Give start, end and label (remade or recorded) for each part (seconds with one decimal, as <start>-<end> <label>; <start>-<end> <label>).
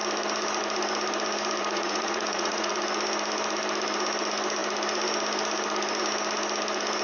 0.0-1.6 recorded; 1.6-2.7 remade; 2.7-7.0 recorded